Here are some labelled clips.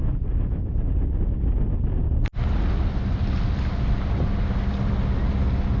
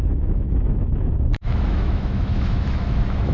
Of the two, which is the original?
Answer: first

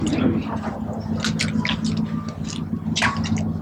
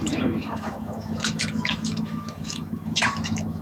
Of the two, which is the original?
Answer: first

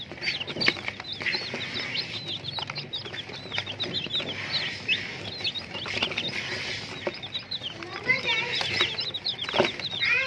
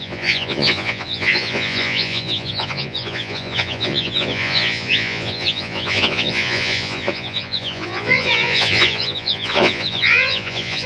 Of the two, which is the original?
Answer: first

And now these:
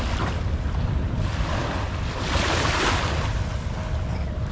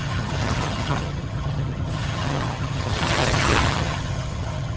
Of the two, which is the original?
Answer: first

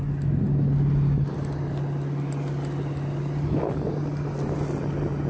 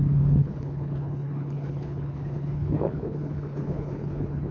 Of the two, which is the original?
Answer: first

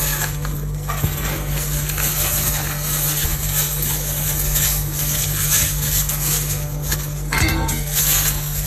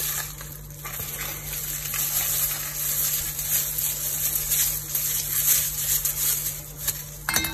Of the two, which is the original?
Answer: second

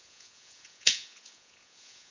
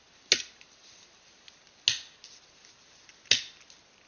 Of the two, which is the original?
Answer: second